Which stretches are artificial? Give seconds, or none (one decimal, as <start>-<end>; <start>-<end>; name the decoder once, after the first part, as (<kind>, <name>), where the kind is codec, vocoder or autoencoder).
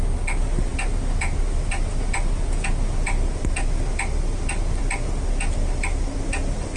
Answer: none